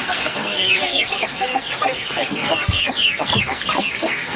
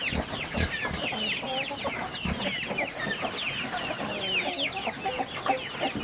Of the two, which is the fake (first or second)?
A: first